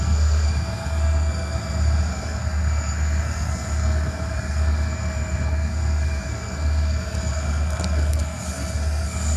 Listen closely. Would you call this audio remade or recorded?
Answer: remade